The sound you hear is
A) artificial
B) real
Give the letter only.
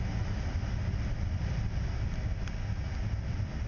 B